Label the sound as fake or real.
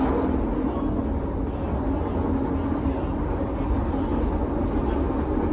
real